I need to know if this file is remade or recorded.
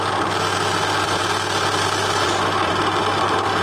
recorded